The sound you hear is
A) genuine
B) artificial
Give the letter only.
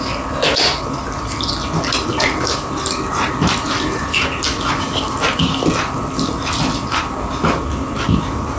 A